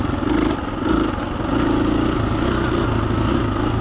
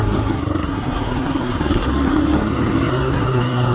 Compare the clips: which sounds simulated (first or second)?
second